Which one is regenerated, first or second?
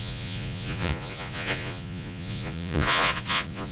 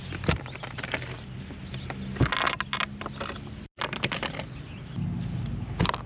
first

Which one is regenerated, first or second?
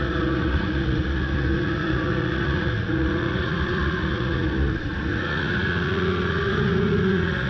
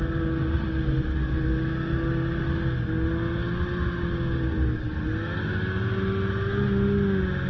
first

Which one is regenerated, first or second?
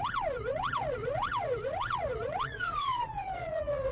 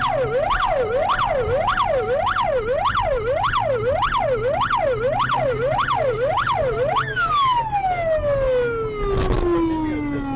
first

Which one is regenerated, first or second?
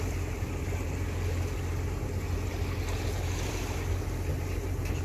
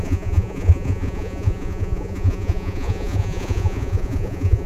second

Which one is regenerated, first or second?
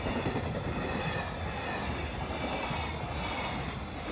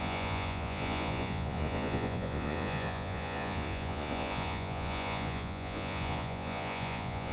second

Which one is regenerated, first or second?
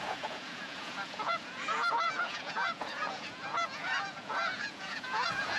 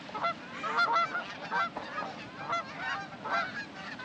first